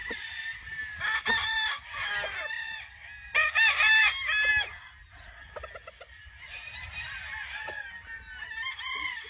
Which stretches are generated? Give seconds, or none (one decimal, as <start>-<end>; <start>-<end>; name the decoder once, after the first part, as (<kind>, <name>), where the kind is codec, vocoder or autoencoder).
0.0-0.8 (vocoder, BigVGAN v2)